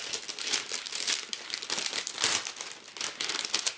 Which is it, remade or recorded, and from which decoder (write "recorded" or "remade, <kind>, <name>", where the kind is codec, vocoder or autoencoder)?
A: recorded